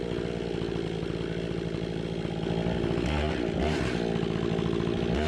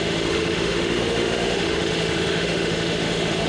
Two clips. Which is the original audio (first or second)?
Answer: first